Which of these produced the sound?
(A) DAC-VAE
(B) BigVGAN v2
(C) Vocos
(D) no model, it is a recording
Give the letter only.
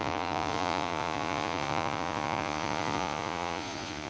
C